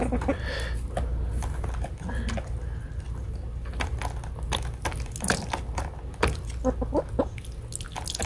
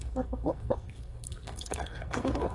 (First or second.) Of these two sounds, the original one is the first